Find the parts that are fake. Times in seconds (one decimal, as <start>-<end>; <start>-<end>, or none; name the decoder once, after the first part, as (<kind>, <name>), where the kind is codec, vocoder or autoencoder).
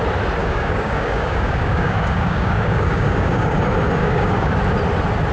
0.4-3.6 (codec, DAC); 4.0-4.5